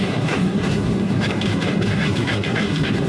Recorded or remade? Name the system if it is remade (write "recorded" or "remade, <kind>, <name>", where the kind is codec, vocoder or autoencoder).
remade, codec, SNAC